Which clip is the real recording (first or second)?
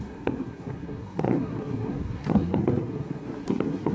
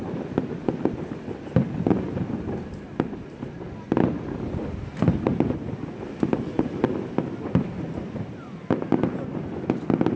second